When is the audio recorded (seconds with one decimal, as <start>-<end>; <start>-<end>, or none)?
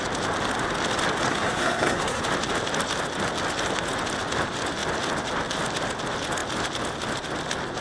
0.0-1.3; 2.2-7.8